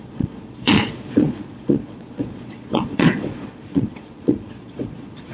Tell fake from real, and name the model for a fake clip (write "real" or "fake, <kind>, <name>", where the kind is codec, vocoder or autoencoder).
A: fake, vocoder, Vocos